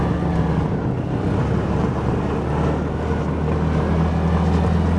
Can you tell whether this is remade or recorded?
recorded